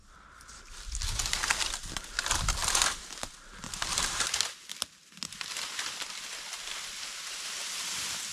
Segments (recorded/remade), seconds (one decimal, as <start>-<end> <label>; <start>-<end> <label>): 0.0-8.3 recorded